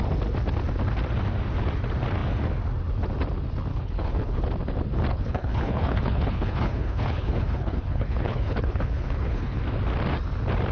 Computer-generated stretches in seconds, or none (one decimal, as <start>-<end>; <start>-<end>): 3.7-4.4; 5.1-9.6